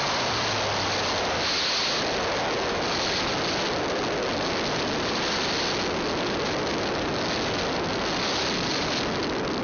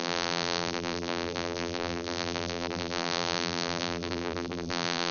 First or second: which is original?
first